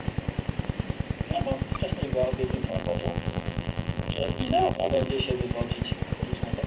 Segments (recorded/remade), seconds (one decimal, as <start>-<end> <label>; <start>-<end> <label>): 0.0-2.7 recorded; 2.7-5.1 remade; 5.1-6.7 recorded